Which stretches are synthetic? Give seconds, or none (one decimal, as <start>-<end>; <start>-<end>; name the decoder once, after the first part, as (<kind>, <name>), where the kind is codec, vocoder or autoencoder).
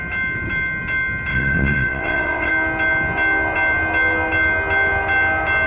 1.3-2.5 (vocoder, WaveNeXt)